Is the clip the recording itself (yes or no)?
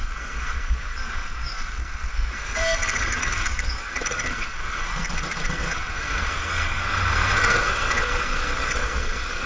no